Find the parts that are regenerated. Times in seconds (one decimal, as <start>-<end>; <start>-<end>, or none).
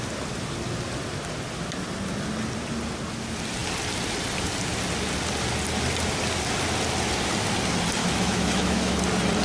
8.0-9.0